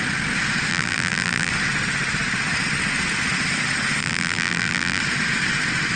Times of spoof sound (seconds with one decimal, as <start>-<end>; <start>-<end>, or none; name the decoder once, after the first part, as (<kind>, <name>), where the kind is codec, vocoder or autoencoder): 0.7-1.5 (vocoder, BigVGAN v2); 4.0-5.0